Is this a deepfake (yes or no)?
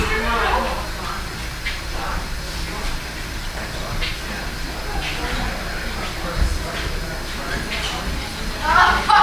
no